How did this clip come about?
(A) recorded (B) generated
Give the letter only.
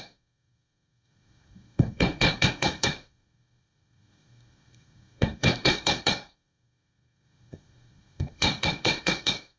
B